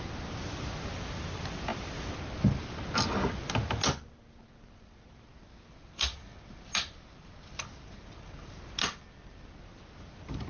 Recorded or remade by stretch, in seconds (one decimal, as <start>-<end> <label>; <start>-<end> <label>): 0.0-10.5 recorded